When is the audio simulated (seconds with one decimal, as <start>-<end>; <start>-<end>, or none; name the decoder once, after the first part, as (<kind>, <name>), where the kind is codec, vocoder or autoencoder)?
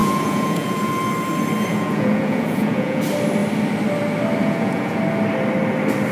0.0-0.9 (vocoder, Vocos); 1.7-3.0; 4.4-5.0